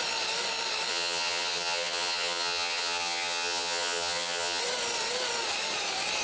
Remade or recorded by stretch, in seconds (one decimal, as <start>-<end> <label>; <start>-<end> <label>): 0.0-0.9 recorded; 0.9-4.6 remade; 4.6-6.2 recorded